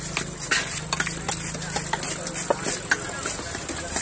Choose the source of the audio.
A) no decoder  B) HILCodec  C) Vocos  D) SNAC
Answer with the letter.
A